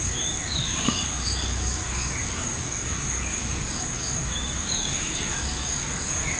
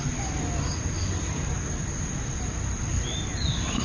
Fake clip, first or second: first